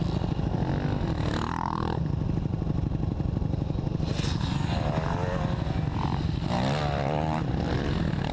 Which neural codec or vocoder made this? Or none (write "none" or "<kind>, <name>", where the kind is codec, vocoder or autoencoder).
none